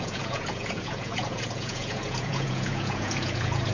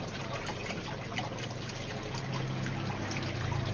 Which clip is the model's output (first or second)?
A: first